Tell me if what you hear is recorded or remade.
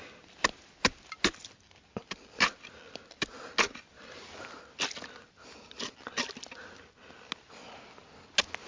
recorded